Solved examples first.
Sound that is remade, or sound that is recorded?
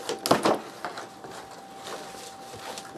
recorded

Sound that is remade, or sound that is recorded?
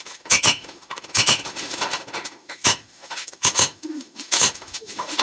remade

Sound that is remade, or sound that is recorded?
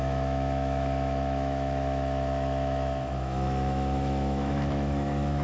remade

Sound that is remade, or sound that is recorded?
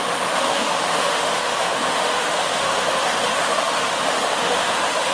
remade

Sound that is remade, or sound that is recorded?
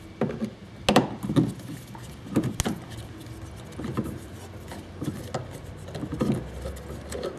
recorded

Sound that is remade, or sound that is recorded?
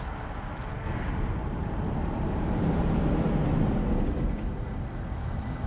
recorded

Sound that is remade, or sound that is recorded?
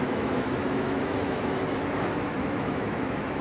remade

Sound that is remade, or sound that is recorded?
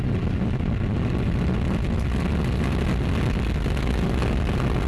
recorded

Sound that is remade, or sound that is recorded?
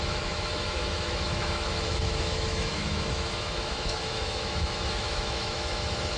remade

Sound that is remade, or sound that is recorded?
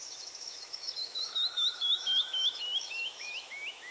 remade